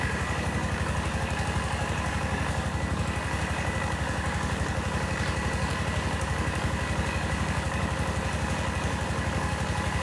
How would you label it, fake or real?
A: fake